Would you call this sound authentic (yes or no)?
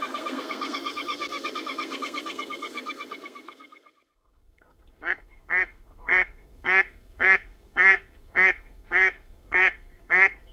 no